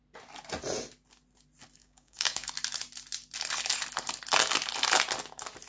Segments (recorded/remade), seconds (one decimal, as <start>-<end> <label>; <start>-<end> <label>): 0.0-1.8 recorded; 1.8-2.5 remade; 2.5-5.7 recorded